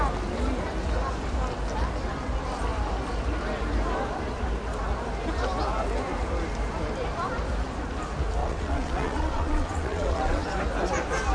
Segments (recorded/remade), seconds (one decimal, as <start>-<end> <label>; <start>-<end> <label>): 0.0-8.4 recorded; 8.4-10.5 remade; 10.5-11.3 recorded